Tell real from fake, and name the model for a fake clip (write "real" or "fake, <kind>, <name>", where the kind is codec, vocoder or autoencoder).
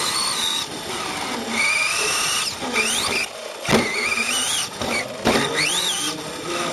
real